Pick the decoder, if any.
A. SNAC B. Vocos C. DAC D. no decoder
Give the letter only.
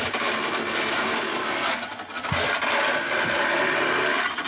D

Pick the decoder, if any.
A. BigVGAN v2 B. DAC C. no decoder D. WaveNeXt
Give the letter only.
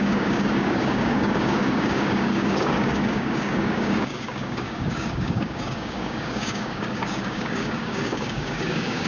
B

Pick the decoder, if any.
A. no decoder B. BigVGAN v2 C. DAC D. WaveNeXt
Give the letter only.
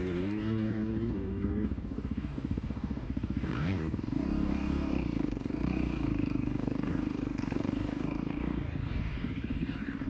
C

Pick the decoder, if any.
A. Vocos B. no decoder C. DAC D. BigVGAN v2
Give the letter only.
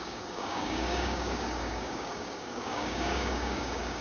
C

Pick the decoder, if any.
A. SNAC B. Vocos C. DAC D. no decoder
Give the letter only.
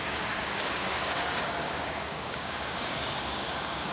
C